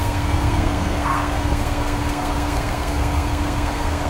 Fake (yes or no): yes